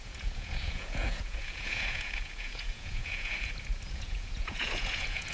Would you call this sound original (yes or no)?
no